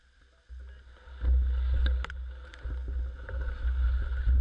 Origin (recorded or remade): recorded